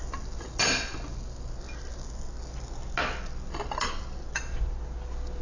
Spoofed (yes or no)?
no